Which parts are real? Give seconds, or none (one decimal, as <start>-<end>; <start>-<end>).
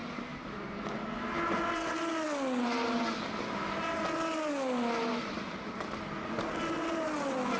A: 0.0-7.6